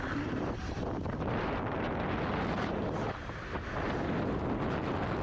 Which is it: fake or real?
real